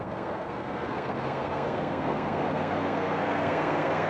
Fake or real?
fake